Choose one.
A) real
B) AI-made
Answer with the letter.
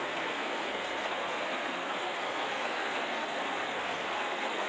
B